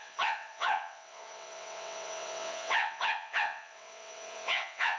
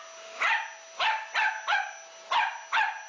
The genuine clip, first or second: second